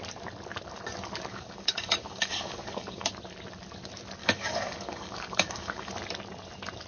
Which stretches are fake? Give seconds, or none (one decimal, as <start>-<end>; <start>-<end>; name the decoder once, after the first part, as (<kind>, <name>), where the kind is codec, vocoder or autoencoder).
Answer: 1.3-3.1 (codec, DAC); 4.2-5.9